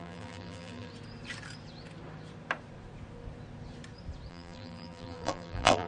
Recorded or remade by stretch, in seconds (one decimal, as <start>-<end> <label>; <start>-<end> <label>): 0.0-0.9 remade; 0.9-4.3 recorded; 4.3-5.9 remade